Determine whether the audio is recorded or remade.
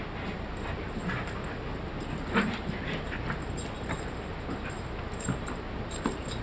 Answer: recorded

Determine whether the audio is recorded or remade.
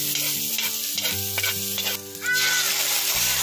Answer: recorded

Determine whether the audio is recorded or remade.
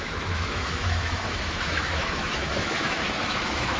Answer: remade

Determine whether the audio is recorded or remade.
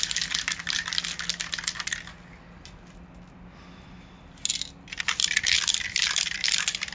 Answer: recorded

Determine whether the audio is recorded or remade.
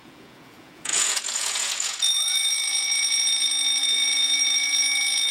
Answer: remade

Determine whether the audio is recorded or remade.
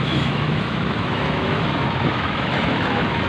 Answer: remade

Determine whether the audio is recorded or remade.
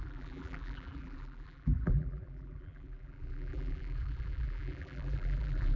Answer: remade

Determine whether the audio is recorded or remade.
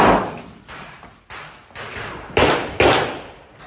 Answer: recorded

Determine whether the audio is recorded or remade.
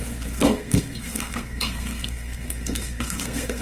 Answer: remade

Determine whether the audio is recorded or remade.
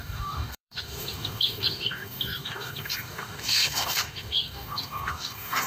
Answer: remade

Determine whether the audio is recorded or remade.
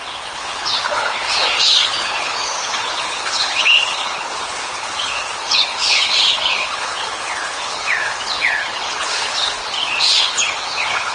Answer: remade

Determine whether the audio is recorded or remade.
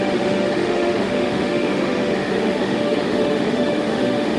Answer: remade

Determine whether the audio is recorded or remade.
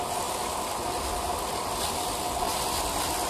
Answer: recorded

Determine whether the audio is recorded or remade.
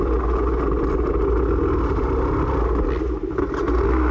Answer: recorded